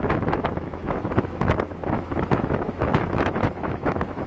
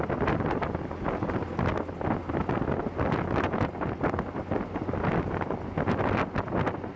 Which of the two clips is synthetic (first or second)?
first